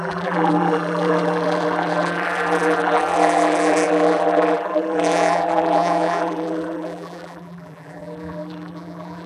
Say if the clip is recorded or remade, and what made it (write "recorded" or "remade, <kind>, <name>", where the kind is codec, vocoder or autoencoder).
remade, vocoder, BigVGAN v2